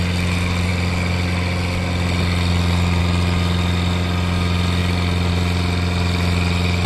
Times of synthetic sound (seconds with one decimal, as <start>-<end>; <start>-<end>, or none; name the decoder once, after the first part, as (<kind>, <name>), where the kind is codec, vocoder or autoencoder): none